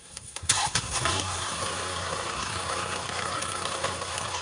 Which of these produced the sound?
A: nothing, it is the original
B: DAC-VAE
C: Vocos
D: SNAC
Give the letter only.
D